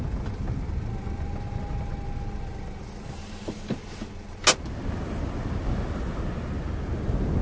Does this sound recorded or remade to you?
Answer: recorded